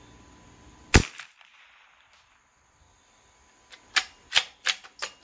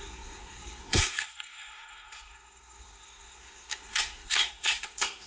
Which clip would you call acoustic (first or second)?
first